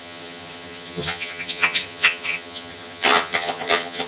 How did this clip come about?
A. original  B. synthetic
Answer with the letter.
B